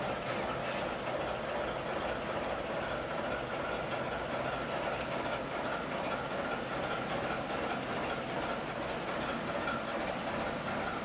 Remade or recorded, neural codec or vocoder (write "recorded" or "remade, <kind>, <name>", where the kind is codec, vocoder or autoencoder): recorded